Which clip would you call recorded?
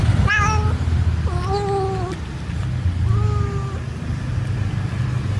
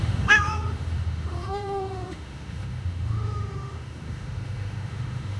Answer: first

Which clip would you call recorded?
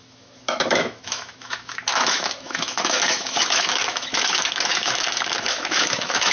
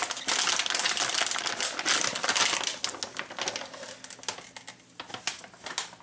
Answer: second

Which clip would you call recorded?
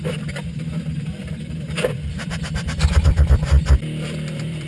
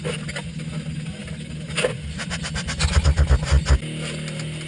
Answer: second